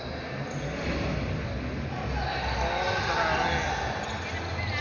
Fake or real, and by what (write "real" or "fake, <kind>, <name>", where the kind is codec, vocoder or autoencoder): real